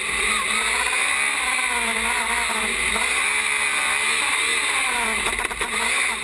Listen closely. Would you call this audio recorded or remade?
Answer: recorded